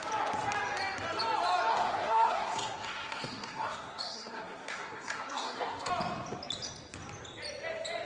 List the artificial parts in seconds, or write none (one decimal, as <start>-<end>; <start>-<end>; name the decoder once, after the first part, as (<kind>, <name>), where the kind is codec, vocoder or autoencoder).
1.7-5.9 (codec, SNAC)